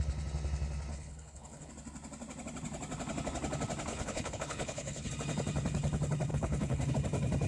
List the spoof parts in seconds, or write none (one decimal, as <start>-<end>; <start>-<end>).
0.9-1.7; 3.9-5.1; 6.3-6.9